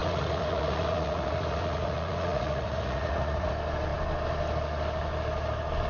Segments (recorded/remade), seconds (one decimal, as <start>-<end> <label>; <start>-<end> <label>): 0.0-3.5 remade; 3.5-5.9 recorded